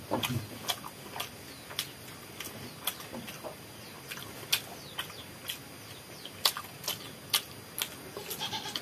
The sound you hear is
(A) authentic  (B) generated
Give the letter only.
A